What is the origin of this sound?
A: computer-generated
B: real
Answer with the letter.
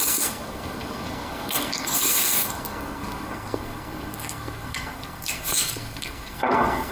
A